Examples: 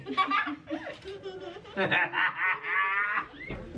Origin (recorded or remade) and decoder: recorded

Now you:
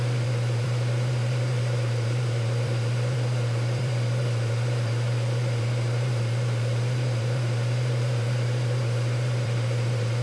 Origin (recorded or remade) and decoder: remade, vocoder, BigVGAN v2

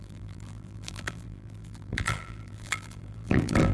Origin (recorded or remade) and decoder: remade, vocoder, BigVGAN v2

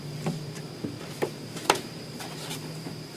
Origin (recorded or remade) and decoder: remade, vocoder, BigVGAN v2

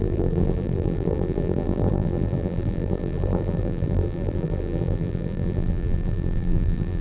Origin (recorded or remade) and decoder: remade, vocoder, BigVGAN v2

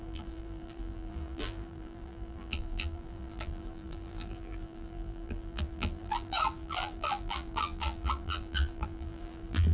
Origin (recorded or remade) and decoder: remade, vocoder, BigVGAN v2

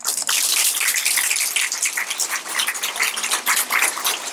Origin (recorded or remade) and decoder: remade, vocoder, BigVGAN v2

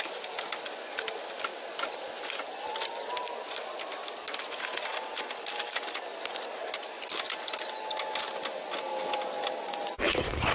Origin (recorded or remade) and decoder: recorded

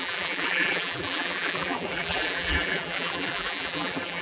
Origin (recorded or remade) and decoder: remade, vocoder, BigVGAN v2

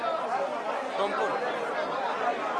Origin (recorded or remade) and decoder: recorded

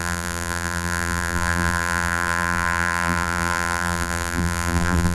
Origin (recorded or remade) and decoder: remade, vocoder, BigVGAN v2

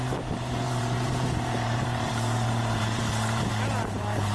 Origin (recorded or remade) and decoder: remade, vocoder, BigVGAN v2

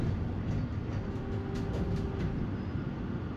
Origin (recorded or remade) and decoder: recorded